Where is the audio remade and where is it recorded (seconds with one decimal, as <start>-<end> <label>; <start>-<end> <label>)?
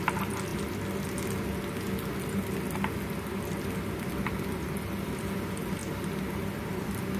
0.0-0.5 remade; 0.5-3.6 recorded; 3.6-5.8 remade; 5.8-6.7 recorded; 6.7-7.2 remade